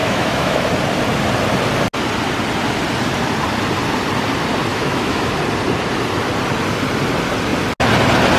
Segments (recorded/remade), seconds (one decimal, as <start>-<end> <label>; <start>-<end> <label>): 0.0-0.7 remade; 0.7-4.7 recorded; 4.7-5.3 remade; 5.3-8.4 recorded